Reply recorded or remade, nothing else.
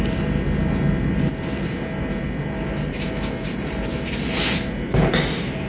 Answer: recorded